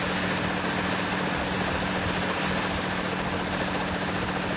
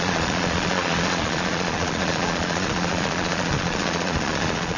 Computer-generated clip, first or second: second